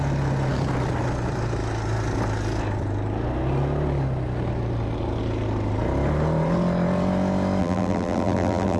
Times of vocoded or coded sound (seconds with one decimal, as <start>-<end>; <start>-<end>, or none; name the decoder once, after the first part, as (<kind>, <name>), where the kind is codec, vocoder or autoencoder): 7.6-8.8 (vocoder, BigVGAN v2)